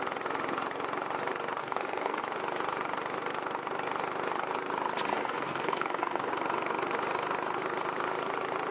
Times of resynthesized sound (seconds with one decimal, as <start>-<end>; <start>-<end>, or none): 1.6-2.2; 5.1-6.3